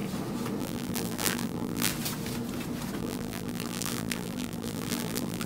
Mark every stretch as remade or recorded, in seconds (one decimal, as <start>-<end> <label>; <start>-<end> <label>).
0.0-0.6 recorded; 0.6-1.9 remade; 1.9-3.0 recorded; 3.0-5.5 remade